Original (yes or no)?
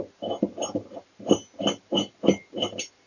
yes